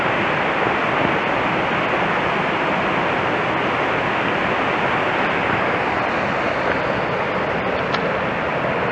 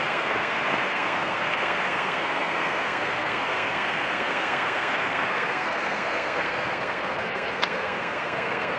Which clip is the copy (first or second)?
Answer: second